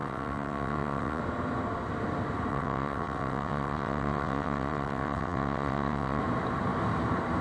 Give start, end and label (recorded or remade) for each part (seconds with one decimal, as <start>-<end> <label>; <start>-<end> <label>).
0.0-1.2 remade; 1.2-2.5 recorded; 2.5-6.2 remade; 6.2-7.4 recorded